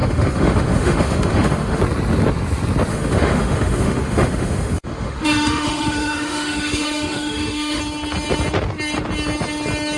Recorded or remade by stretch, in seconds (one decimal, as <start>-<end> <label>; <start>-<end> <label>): 0.0-1.8 remade; 1.8-2.9 recorded; 2.9-7.8 remade; 7.8-10.0 recorded